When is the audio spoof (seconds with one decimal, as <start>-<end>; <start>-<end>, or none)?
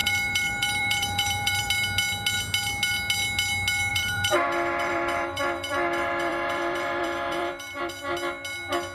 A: 0.0-1.7; 3.9-7.9